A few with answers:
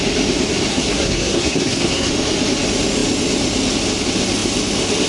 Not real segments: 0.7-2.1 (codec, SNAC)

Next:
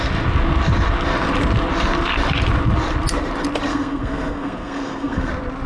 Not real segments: 3.7-5.3 (codec, SNAC)

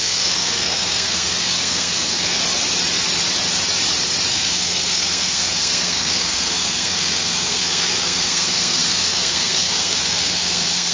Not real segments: 0.0-2.4 (codec, SNAC); 4.3-10.9